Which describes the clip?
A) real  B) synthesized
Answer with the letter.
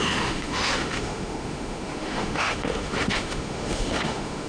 B